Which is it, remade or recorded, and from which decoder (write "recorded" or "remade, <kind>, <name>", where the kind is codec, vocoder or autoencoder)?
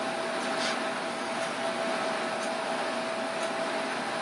recorded